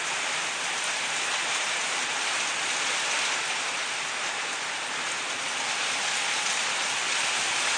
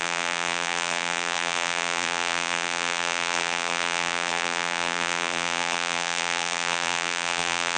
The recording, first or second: first